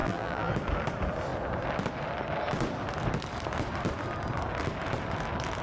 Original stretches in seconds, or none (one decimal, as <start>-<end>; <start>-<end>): 0.5-5.6